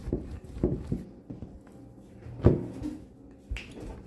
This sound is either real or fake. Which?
real